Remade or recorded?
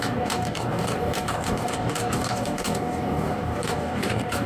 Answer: remade